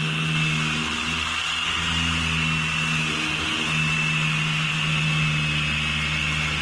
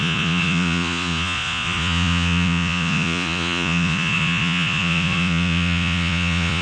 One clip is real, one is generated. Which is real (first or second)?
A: first